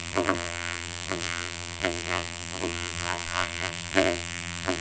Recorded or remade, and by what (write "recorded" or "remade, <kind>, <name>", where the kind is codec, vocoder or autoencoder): remade, vocoder, BigVGAN v2